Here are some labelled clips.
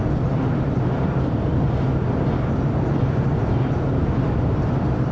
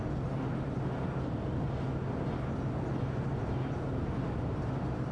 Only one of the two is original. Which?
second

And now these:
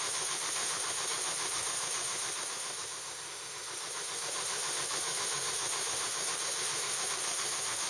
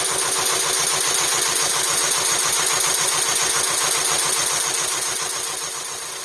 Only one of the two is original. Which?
second